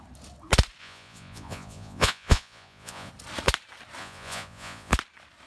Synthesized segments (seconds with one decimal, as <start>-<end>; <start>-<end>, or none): 0.8-3.1; 4.0-4.9